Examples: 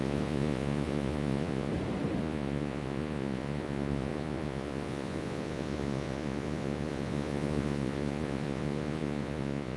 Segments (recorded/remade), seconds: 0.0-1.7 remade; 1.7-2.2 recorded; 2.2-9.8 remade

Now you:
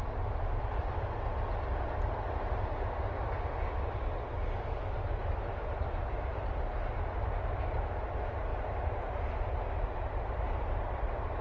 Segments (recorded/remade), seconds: 0.0-11.4 recorded

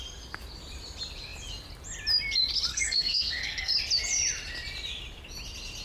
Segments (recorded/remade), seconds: 0.0-2.7 recorded; 2.7-3.7 remade; 3.7-5.8 recorded

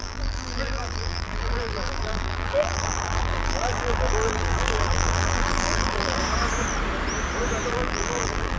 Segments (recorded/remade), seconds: 0.0-6.2 remade; 6.2-7.7 recorded; 7.7-8.6 remade